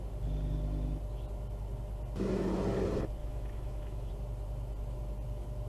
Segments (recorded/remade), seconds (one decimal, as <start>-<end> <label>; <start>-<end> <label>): 0.0-3.2 recorded; 3.2-4.1 remade; 4.1-5.7 recorded